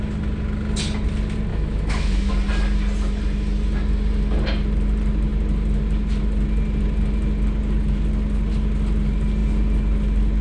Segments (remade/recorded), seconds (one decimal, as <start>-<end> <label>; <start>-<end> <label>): 0.0-1.5 recorded; 1.5-2.3 remade; 2.3-10.4 recorded